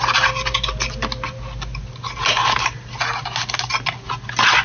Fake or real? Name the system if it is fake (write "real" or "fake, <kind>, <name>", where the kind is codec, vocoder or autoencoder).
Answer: real